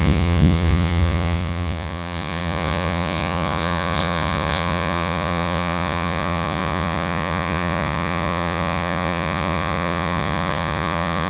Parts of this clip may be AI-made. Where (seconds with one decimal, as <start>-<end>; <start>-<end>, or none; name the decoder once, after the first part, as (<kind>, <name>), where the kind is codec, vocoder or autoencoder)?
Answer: 0.0-11.3 (vocoder, Vocos)